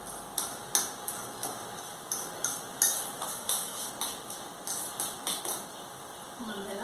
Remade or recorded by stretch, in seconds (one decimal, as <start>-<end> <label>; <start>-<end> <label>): 0.0-3.3 recorded; 3.3-3.9 remade; 3.9-6.8 recorded